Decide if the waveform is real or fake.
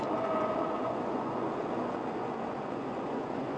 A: fake